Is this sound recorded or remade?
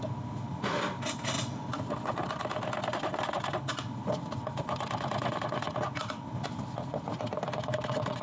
recorded